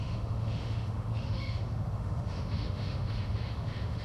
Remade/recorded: remade